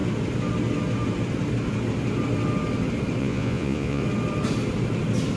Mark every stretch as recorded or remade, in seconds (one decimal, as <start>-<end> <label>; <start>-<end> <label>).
0.0-3.2 recorded; 3.2-4.0 remade; 4.0-5.4 recorded